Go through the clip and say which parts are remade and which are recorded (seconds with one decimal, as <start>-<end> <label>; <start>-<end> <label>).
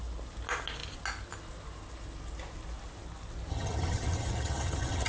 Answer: 0.0-3.5 recorded; 3.5-5.1 remade